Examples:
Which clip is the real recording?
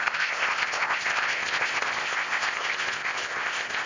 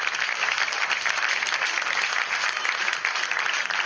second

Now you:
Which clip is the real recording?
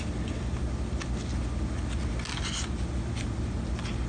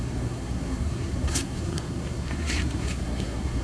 first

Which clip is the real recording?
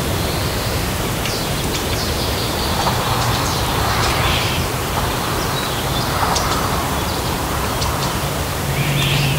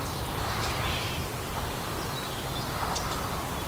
second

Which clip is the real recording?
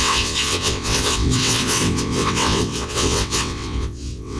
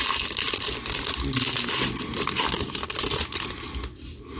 second